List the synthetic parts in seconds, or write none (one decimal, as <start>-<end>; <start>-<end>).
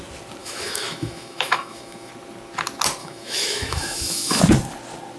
0.4-2.1; 3.0-4.4